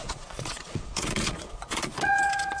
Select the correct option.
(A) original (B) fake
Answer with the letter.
B